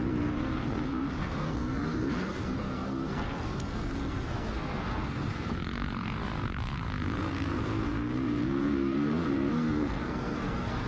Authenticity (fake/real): fake